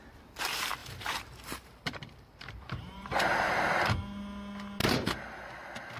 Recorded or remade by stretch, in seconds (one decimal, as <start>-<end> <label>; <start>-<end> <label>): 0.0-0.8 recorded; 0.8-3.6 remade; 3.6-4.8 recorded; 4.8-5.6 remade; 5.6-6.0 recorded